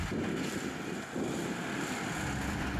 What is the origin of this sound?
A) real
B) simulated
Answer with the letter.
B